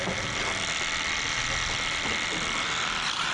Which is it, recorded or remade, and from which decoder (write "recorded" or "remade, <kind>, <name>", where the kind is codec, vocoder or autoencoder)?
recorded